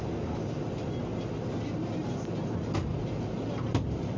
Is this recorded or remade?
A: recorded